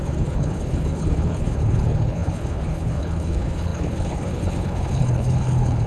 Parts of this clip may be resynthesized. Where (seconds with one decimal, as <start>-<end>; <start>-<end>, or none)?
0.0-5.9